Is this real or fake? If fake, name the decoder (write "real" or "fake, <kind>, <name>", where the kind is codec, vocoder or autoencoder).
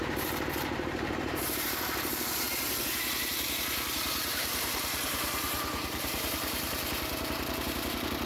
fake, vocoder, BigVGAN v2